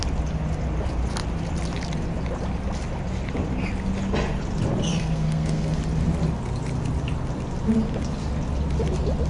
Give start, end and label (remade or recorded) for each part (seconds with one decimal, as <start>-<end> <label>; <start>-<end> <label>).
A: 0.0-4.9 recorded; 4.9-5.8 remade; 5.8-9.3 recorded